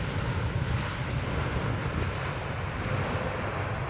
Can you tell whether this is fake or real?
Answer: real